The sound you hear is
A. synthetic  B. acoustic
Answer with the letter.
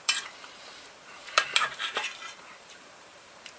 A